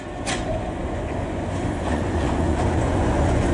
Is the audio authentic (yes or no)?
no